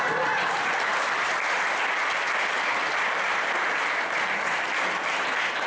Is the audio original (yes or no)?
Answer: yes